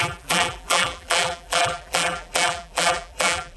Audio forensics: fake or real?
fake